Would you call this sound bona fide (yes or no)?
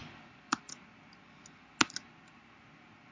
yes